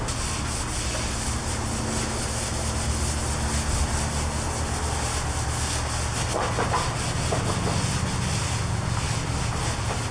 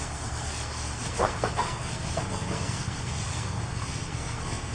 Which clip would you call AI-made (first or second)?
second